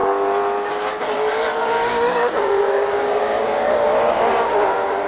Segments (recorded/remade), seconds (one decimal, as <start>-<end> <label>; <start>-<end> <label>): 0.0-1.6 recorded; 1.6-5.1 remade